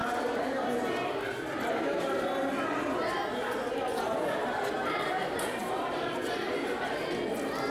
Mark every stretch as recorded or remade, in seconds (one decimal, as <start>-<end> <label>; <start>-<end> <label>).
0.0-7.7 recorded